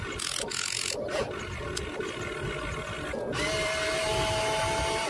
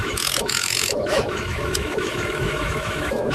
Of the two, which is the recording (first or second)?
first